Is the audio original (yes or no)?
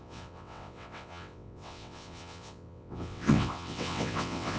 no